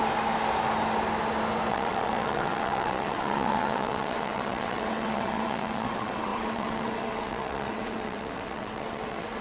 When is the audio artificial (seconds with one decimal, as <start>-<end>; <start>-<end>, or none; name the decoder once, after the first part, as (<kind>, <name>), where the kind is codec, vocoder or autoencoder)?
1.7-9.4 (vocoder, WaveNeXt)